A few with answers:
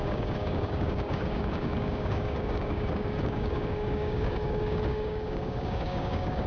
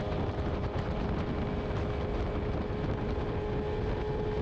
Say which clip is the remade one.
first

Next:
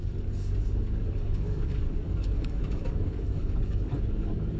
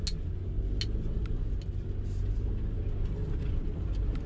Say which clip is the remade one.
first